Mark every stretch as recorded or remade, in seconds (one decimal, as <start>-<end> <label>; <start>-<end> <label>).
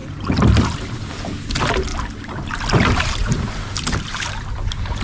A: 0.0-5.0 recorded